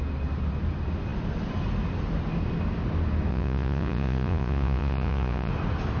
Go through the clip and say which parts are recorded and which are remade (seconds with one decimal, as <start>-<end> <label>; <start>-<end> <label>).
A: 0.0-3.3 recorded; 3.3-5.5 remade; 5.5-6.0 recorded